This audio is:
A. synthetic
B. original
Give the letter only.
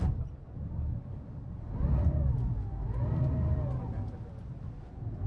B